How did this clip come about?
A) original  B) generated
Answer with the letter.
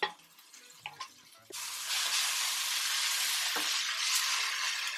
A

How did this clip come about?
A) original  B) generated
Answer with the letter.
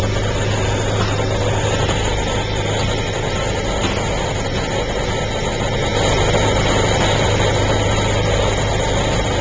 A